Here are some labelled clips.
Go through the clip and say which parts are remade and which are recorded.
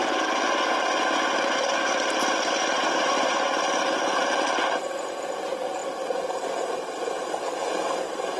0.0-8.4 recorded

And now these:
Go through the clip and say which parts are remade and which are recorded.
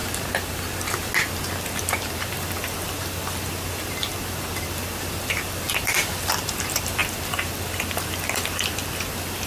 0.0-2.1 recorded; 2.1-9.5 remade